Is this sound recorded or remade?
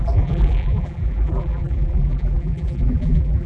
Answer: remade